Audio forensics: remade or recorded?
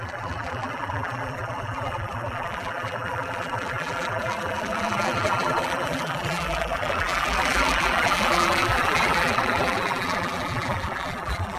remade